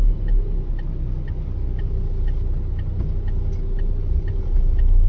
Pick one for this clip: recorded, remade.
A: recorded